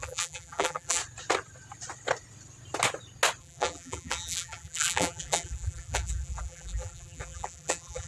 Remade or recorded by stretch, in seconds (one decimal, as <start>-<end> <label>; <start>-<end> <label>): 0.0-1.0 remade; 1.0-3.4 recorded; 3.4-8.1 remade